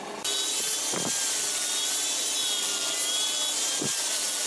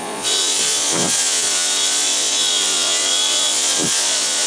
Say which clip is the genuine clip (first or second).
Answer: first